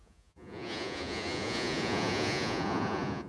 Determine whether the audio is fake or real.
fake